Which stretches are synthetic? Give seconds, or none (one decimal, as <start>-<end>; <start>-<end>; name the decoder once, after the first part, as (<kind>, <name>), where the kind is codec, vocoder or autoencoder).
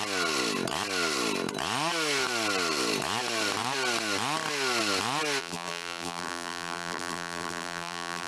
5.4-8.3 (vocoder, BigVGAN v2)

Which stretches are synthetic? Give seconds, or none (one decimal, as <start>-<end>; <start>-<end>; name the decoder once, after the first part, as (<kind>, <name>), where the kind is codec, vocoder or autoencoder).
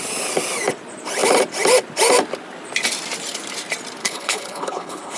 4.0-5.2 (codec, HILCodec)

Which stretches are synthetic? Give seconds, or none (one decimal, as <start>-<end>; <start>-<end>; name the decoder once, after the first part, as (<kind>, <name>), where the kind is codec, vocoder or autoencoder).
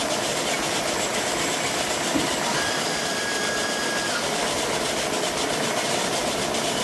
0.0-6.8 (vocoder, BigVGAN v2)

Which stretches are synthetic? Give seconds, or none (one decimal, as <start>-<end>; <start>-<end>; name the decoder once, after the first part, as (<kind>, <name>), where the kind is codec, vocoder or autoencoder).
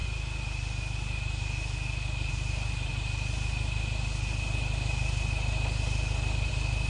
none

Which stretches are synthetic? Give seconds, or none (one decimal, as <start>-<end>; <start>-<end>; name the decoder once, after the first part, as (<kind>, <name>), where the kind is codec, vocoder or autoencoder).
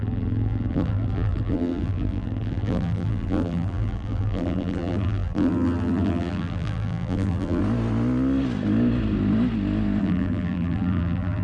0.0-7.6 (vocoder, BigVGAN v2); 10.0-11.4